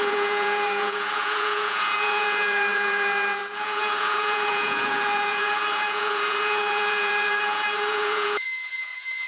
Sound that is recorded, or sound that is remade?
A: remade